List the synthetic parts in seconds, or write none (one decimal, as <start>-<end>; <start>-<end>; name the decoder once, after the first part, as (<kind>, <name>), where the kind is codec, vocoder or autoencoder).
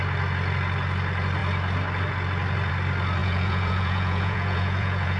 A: 3.2-5.2 (vocoder, Vocos)